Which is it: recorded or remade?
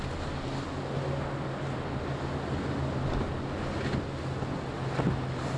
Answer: recorded